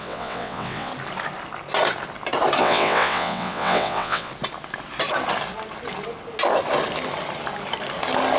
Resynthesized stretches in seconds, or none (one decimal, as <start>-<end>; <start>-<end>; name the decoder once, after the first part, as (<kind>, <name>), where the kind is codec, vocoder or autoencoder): 0.0-0.9 (vocoder, WaveNeXt); 2.6-4.3